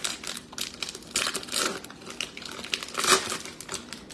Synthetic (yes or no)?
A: no